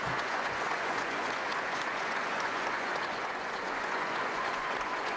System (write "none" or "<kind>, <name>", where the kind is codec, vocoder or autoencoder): vocoder, Vocos